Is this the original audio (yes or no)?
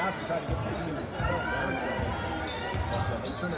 yes